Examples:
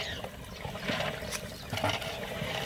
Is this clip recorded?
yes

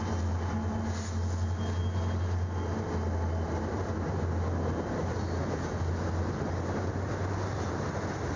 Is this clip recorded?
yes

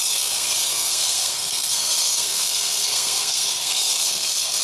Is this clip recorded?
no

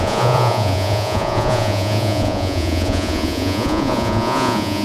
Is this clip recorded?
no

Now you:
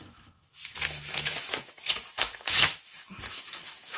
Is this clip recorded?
no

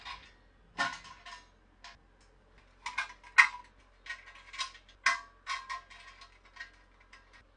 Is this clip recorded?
yes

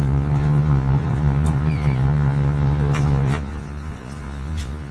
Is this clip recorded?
no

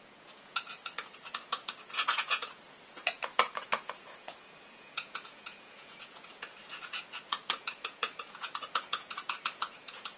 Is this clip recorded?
no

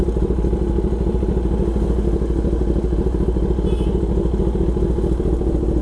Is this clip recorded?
yes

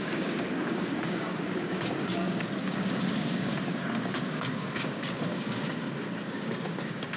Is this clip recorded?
no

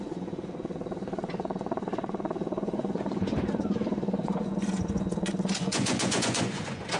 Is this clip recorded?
no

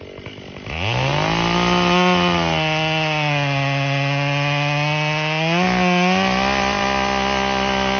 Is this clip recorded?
yes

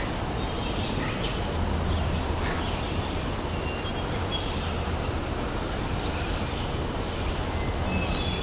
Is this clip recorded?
yes